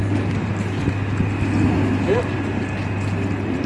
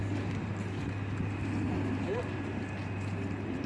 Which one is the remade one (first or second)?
second